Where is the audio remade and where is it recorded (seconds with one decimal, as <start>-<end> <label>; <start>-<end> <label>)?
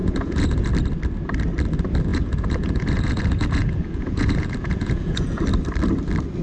0.0-0.7 remade; 0.7-2.1 recorded; 2.1-5.4 remade; 5.4-6.4 recorded